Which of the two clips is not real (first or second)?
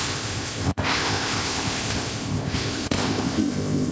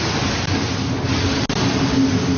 first